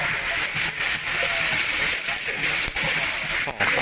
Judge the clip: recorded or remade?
recorded